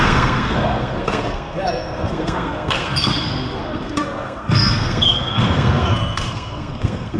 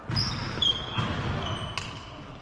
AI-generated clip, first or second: first